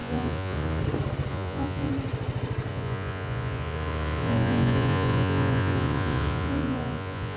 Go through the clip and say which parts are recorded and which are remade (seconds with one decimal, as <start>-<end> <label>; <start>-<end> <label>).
0.0-0.8 remade; 0.8-1.3 recorded; 1.3-1.9 remade; 1.9-2.7 recorded; 2.7-7.4 remade